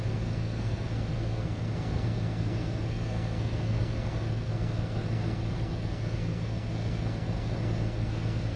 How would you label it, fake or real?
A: fake